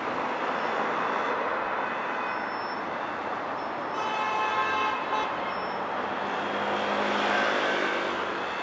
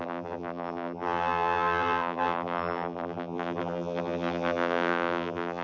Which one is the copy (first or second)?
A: second